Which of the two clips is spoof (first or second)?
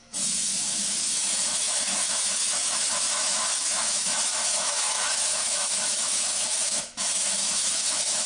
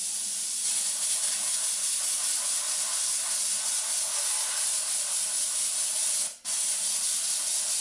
first